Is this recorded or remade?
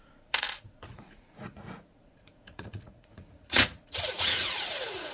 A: remade